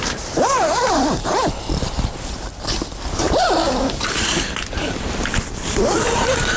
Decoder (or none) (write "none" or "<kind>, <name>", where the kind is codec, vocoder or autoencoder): none